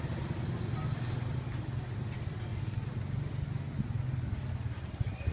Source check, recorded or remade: recorded